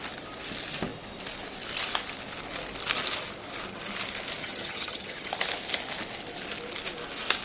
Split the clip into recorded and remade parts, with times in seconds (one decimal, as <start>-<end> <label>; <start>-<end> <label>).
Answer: 0.0-4.4 recorded; 4.4-5.3 remade; 5.3-7.4 recorded